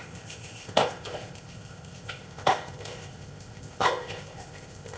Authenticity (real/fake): fake